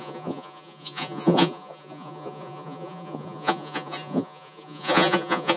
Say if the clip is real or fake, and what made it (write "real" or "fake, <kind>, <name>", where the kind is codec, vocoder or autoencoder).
fake, vocoder, Vocos